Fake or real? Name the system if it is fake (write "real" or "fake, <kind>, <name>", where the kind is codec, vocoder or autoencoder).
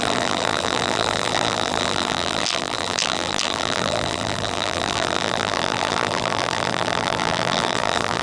fake, vocoder, BigVGAN v2